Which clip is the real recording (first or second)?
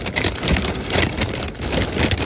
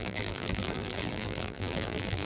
first